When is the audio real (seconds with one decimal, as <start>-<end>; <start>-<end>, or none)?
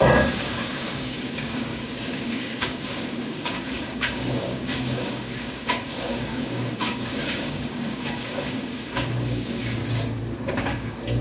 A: 9.8-10.5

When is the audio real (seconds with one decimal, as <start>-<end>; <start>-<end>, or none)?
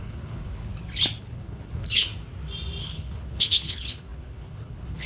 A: 0.7-1.2; 2.1-2.8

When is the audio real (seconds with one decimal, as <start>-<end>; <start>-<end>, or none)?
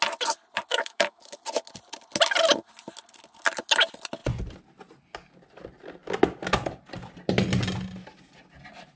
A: 0.0-0.7; 1.4-9.0